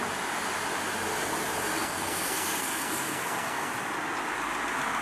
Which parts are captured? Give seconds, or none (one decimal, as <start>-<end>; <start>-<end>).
0.0-1.8; 3.7-5.0